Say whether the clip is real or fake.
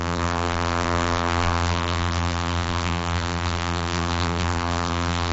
fake